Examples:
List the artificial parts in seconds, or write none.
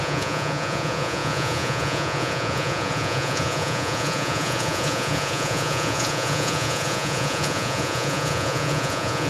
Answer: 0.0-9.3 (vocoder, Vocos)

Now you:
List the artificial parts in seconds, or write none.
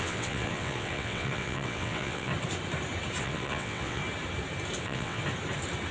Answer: 0.0-2.3 (vocoder, WaveNeXt); 3.2-4.0; 4.8-5.2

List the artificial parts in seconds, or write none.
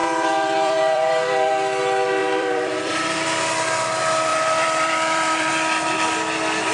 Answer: 0.0-1.5 (vocoder, BigVGAN v2); 2.2-2.9; 4.3-5.5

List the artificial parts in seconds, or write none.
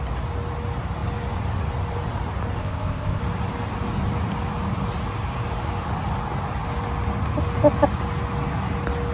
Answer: 2.6-3.2 (codec, ZipCodec)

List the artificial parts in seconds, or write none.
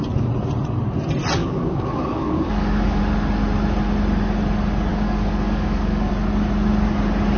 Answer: 1.4-3.0 (codec, DAC); 4.9-6.1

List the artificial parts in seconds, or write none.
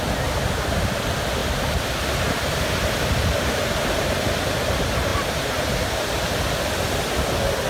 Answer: none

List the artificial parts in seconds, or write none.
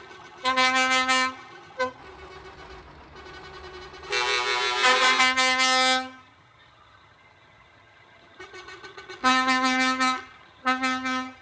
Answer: 0.0-2.0 (vocoder, HiFi-GAN); 5.2-11.4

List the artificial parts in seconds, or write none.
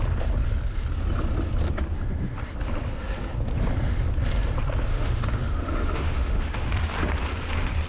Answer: 4.9-6.7 (autoencoder, DAC-VAE)